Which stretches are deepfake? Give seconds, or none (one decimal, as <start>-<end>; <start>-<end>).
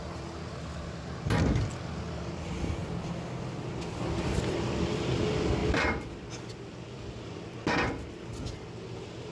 none